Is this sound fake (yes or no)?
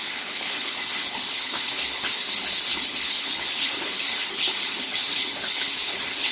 yes